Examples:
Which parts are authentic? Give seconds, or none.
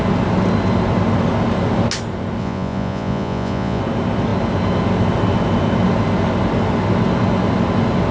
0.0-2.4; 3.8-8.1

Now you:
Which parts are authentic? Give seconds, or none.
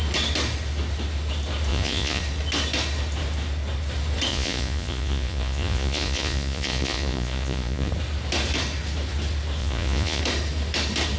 0.0-1.7; 2.2-4.3; 7.9-9.6; 10.2-11.2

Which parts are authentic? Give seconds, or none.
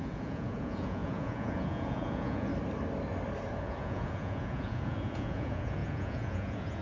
2.5-3.6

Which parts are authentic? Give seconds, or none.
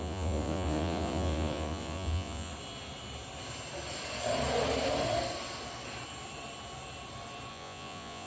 2.5-7.5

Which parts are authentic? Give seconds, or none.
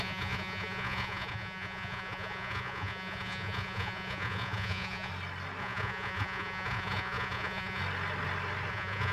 5.1-5.6; 7.8-8.7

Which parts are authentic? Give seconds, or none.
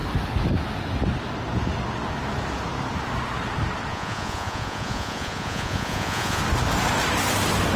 0.0-3.9; 6.4-7.8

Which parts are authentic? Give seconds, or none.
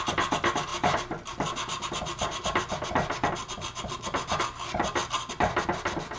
0.0-6.2